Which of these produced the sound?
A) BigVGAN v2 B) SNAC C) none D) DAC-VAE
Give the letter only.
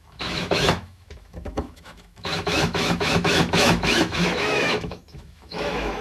D